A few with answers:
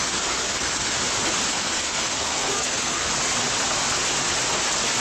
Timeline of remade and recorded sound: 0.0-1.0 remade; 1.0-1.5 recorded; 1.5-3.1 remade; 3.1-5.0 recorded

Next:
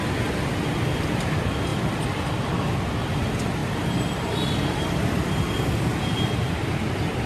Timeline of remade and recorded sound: 0.0-3.6 recorded; 3.6-5.5 remade; 5.5-7.3 recorded

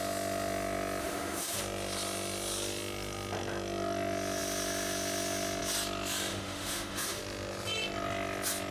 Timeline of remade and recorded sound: 0.0-1.0 recorded; 1.0-1.6 remade; 1.6-6.3 recorded; 6.3-7.2 remade; 7.2-8.7 recorded

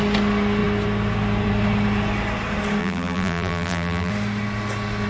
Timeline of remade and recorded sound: 0.0-2.8 recorded; 2.8-4.1 remade; 4.1-5.1 recorded

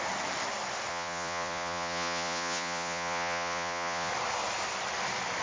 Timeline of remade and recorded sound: 0.0-0.9 recorded; 0.9-4.1 remade; 4.1-5.4 recorded

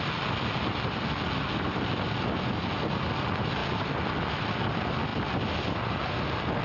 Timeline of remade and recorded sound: 0.0-6.6 recorded

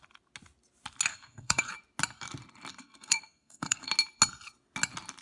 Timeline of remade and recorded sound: 0.0-1.1 recorded; 1.1-1.7 remade; 1.7-2.7 recorded; 2.7-3.9 remade; 3.9-5.2 recorded